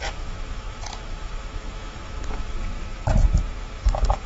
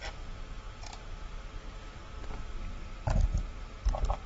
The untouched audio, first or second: second